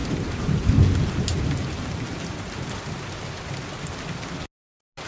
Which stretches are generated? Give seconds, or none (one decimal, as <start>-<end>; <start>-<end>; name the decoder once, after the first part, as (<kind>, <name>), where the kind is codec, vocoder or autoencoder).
0.0-2.8 (vocoder, BigVGAN v2)